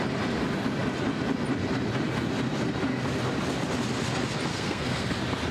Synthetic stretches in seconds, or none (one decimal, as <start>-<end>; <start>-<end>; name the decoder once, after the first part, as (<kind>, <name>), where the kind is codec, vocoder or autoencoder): 4.5-5.1 (codec, SNAC)